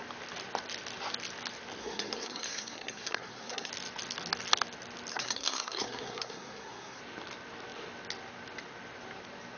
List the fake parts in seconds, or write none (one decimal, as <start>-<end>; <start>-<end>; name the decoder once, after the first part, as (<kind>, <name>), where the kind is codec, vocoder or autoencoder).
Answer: 1.8-3.7 (codec, SNAC); 5.1-7.0